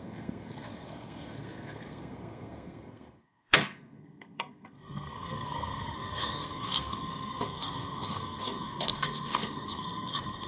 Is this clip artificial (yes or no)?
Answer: yes